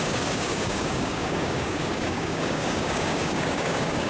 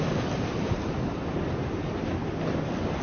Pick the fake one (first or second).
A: first